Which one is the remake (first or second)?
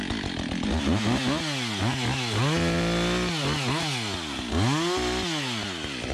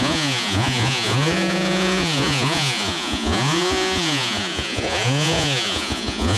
second